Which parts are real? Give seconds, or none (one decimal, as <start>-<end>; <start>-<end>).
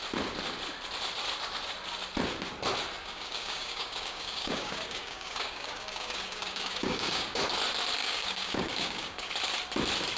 0.0-3.0; 7.4-8.0; 9.3-10.2